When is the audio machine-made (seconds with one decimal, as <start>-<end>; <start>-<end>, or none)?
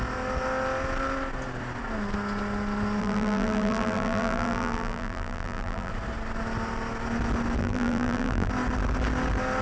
3.0-5.9; 7.6-8.5